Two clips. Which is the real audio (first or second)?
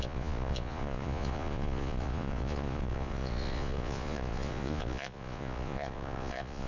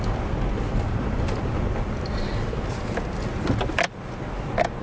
second